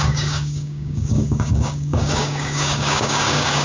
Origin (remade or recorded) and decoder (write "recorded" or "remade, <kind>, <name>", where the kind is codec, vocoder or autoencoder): remade, codec, DAC